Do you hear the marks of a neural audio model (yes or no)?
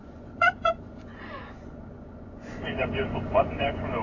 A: yes